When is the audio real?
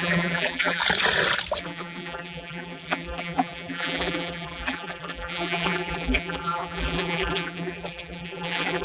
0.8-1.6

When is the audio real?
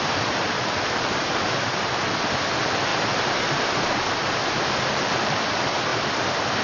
0.0-6.6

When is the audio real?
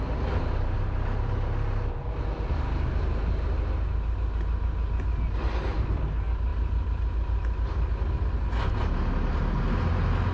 0.0-10.3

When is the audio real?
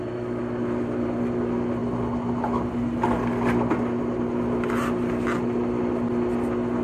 0.0-6.8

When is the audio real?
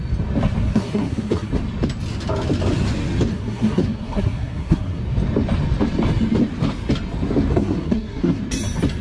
0.0-0.6; 1.5-3.3; 5.0-7.5; 8.4-9.0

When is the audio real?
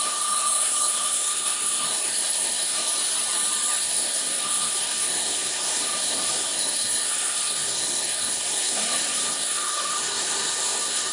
2.9-3.8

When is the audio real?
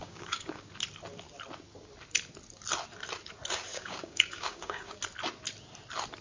0.7-3.7; 5.0-6.2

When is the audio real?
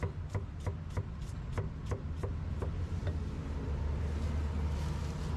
0.0-5.4